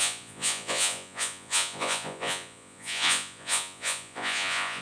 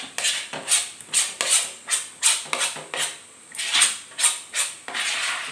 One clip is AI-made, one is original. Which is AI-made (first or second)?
first